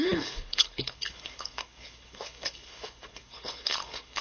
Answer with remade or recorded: remade